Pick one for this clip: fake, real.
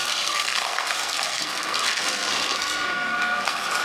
fake